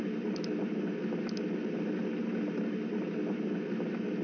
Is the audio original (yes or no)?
yes